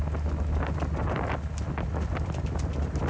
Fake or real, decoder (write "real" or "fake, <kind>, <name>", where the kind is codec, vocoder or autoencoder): real